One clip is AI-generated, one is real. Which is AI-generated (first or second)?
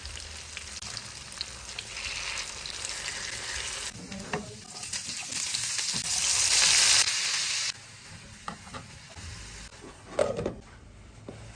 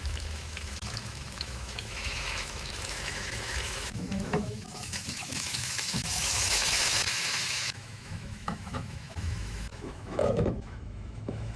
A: second